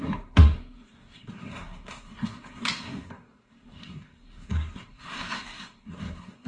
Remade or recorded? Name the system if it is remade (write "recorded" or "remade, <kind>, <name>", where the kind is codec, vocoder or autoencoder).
remade, codec, SNAC